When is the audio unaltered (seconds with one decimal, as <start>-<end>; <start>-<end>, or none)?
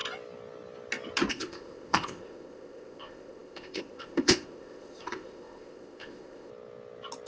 0.0-1.3; 6.5-7.3